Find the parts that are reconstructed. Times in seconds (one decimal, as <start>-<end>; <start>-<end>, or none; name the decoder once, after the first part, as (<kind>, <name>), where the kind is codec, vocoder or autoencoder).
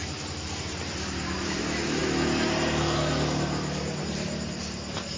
0.0-2.0 (vocoder, BigVGAN v2); 4.0-5.2